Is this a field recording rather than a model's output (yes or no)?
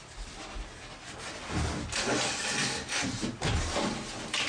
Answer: yes